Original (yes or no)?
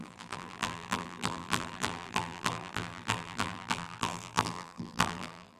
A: no